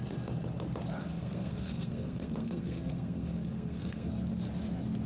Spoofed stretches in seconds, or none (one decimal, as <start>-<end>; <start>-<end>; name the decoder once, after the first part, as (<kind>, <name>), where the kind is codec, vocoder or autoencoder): 1.0-4.1 (codec, SNAC)